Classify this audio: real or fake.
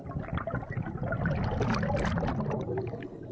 real